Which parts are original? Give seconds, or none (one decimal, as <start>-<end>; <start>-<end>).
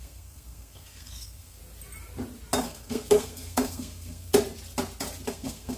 1.6-2.6; 4.3-5.3